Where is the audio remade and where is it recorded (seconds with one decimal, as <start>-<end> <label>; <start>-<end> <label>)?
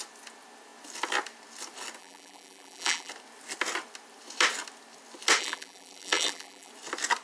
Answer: 0.0-2.0 recorded; 2.0-3.1 remade; 3.1-5.4 recorded; 5.4-6.7 remade; 6.7-7.2 recorded